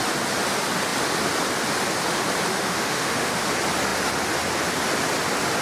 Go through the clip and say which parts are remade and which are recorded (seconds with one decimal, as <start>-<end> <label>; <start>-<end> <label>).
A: 0.0-2.5 recorded; 2.5-3.4 remade; 3.4-5.6 recorded